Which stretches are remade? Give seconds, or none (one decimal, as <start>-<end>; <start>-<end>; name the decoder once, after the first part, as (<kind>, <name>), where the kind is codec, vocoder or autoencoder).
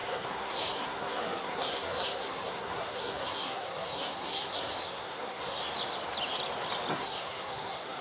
0.0-5.6 (codec, SNAC); 6.9-8.0